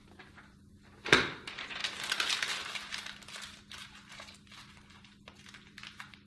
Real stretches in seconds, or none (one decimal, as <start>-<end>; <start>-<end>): 0.0-6.3